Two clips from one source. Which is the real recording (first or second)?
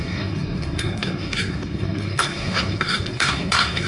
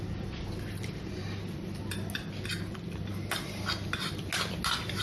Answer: second